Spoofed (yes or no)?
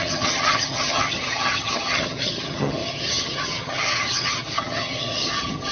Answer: yes